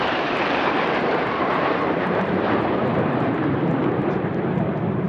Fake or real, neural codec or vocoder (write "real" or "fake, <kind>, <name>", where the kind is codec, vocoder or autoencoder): fake, vocoder, BigVGAN v2